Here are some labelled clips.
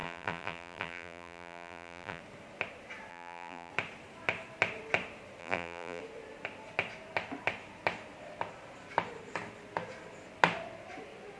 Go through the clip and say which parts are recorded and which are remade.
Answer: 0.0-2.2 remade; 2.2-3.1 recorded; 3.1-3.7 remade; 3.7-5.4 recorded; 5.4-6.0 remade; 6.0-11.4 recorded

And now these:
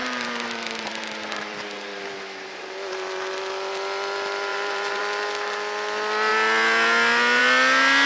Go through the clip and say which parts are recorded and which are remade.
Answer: 0.0-2.0 remade; 2.0-4.5 recorded; 4.5-5.0 remade; 5.0-8.1 recorded